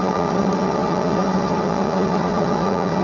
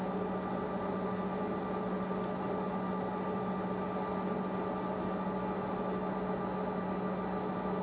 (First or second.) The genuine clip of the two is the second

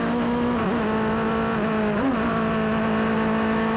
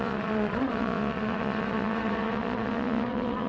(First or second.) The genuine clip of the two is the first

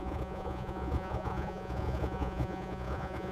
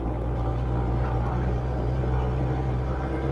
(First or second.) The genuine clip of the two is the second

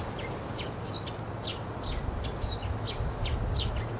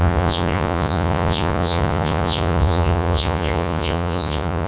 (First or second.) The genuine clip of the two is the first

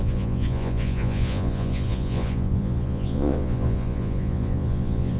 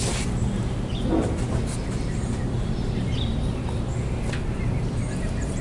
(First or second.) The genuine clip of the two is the second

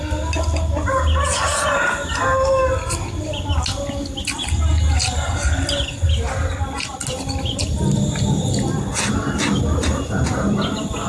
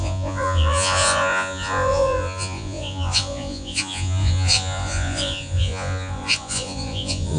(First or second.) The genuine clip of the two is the first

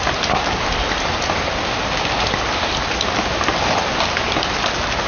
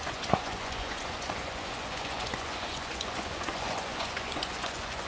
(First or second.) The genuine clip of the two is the first